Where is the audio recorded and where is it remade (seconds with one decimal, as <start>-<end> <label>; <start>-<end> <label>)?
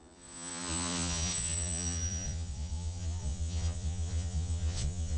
0.0-5.2 remade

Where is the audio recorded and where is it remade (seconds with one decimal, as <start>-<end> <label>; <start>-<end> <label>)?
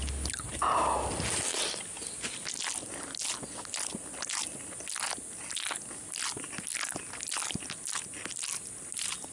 0.0-9.3 recorded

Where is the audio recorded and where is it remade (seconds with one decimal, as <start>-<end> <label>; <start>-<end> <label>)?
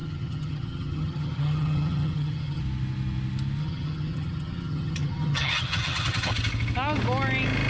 0.0-2.6 remade; 2.6-3.6 recorded; 3.6-6.3 remade; 6.3-7.7 recorded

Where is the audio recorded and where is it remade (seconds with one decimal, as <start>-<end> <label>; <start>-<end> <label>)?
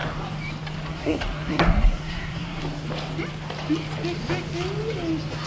0.0-0.9 recorded; 0.9-2.6 remade; 2.6-5.5 recorded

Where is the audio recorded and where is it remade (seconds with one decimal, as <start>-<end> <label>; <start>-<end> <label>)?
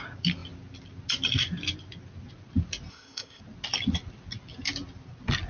0.0-2.9 recorded; 2.9-3.4 remade; 3.4-5.5 recorded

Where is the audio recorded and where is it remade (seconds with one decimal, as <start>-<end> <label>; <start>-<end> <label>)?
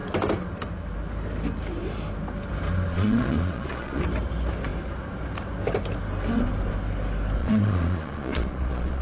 0.0-2.9 recorded; 2.9-4.0 remade; 4.0-7.4 recorded; 7.4-9.0 remade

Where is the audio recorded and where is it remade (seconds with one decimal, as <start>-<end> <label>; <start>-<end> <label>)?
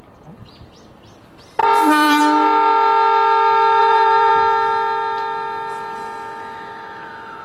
0.0-1.6 recorded; 1.6-2.2 remade; 2.2-3.8 recorded; 3.8-4.3 remade; 4.3-7.4 recorded